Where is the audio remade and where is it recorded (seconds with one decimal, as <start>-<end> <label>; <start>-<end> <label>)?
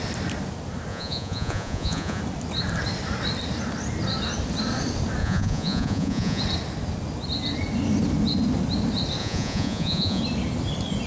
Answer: 0.0-0.9 recorded; 0.9-2.2 remade; 2.2-5.2 recorded; 5.2-6.4 remade; 6.4-9.2 recorded; 9.2-10.2 remade; 10.2-11.1 recorded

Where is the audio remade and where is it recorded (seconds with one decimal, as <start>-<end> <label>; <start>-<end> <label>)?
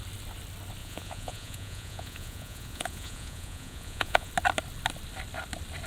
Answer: 0.0-0.8 recorded; 0.8-4.3 remade; 4.3-5.9 recorded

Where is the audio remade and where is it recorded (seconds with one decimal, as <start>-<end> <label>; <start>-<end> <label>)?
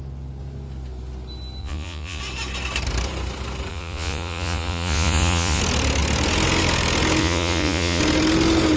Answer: 0.0-1.6 recorded; 1.6-2.2 remade; 2.2-3.7 recorded; 3.7-5.6 remade; 5.6-7.2 recorded; 7.2-8.0 remade; 8.0-8.8 recorded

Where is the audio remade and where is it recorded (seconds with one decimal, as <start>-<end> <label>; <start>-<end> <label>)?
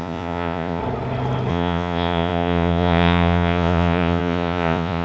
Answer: 0.0-0.8 remade; 0.8-1.5 recorded; 1.5-5.0 remade